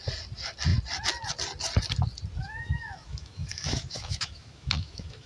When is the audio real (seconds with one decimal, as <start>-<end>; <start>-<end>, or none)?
0.0-2.4